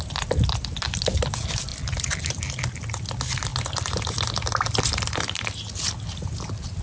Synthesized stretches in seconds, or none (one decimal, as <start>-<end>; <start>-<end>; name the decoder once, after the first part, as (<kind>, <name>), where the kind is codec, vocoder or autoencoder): none